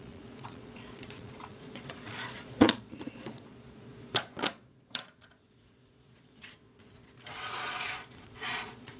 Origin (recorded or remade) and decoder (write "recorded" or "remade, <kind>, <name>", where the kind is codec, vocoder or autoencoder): remade, vocoder, Vocos